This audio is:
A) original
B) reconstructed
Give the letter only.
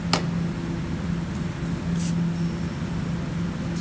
A